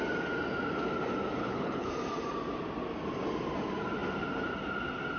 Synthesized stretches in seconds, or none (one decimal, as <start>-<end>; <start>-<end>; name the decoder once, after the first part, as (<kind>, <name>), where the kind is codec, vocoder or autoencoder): 1.4-1.9 (codec, HILCodec)